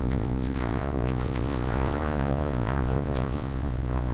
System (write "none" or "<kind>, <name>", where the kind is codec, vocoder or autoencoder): vocoder, Vocos